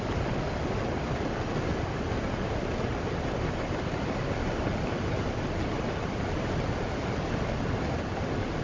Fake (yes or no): no